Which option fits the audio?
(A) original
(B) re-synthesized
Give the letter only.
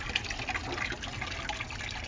A